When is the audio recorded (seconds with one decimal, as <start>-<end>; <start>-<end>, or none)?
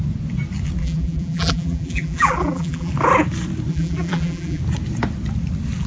0.0-0.8; 2.9-3.7; 4.6-5.9